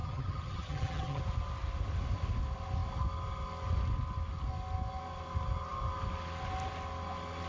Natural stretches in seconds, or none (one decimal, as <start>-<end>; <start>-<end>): 1.2-7.5